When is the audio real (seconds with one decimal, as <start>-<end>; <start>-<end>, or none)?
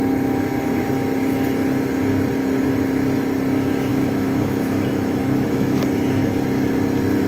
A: 0.0-3.9; 5.8-7.3